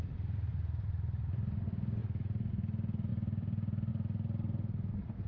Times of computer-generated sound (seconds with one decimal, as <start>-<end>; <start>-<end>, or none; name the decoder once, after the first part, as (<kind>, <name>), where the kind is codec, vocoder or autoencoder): 0.5-1.6 (vocoder, BigVGAN v2); 2.0-2.5; 3.1-3.9

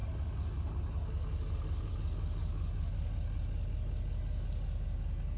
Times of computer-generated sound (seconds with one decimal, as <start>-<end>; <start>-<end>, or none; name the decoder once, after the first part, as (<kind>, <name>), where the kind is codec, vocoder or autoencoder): none

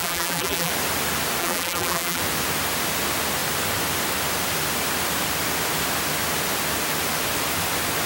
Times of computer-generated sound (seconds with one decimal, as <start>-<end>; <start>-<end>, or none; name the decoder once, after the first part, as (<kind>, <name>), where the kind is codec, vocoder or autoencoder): 0.0-0.7 (vocoder, BigVGAN v2); 1.4-2.2

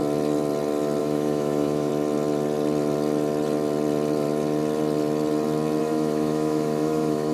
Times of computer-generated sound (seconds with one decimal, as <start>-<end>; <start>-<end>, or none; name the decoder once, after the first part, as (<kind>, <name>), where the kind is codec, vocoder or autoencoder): 1.0-1.9 (autoencoder, DAC-VAE); 5.8-7.3

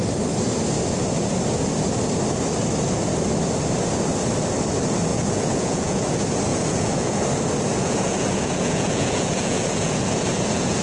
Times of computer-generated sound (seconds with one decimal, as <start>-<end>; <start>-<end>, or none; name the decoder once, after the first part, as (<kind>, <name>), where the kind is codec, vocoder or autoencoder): 5.1-6.1 (vocoder, Vocos); 6.5-7.2; 7.8-10.8

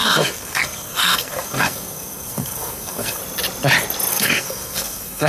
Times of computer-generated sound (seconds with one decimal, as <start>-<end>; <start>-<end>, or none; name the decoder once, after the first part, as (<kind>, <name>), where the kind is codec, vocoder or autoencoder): 0.0-3.2 (codec, SNAC); 4.1-5.3

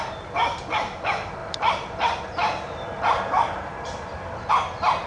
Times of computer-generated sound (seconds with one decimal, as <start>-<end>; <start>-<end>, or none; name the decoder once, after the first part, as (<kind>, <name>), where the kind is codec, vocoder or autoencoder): 1.4-4.5 (vocoder, BigVGAN v2)

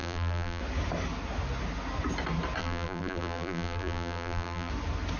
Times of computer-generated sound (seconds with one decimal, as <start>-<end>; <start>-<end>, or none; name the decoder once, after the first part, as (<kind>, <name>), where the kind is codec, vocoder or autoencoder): 0.0-0.6 (vocoder, BigVGAN v2); 2.6-4.7